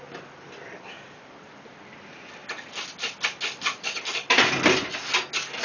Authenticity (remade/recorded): recorded